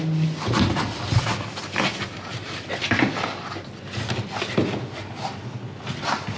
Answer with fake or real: real